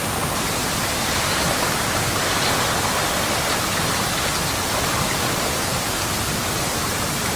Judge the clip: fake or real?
real